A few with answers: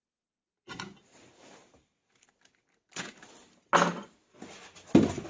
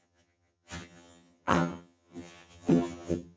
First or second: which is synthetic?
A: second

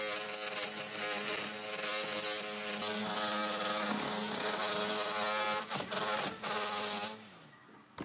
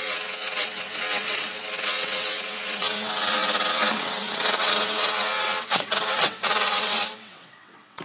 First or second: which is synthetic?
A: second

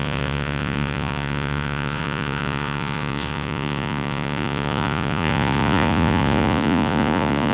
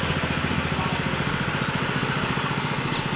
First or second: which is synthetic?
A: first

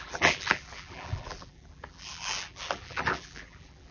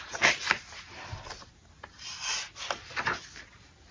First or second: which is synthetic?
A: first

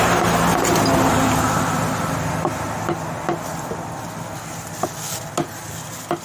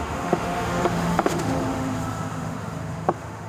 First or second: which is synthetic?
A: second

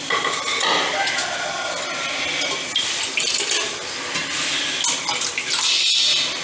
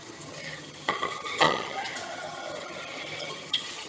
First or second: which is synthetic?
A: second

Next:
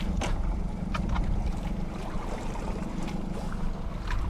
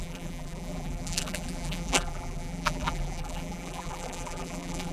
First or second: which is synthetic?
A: second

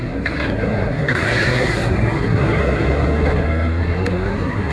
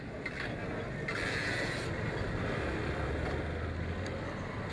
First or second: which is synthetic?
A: first